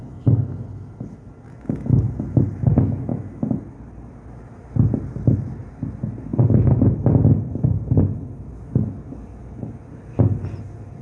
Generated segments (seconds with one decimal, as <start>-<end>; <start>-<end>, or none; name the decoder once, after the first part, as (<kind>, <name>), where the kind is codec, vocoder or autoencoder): none